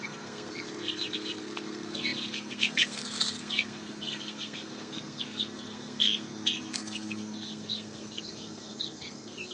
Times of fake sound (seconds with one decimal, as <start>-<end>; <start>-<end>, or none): 0.0-9.5